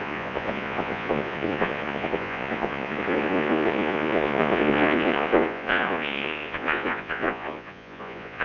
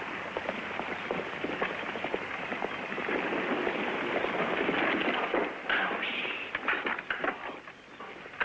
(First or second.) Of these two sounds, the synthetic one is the first